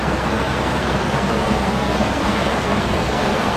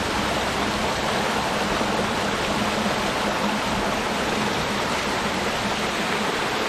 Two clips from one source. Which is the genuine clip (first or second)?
second